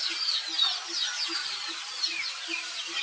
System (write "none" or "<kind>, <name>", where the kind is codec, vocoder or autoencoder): none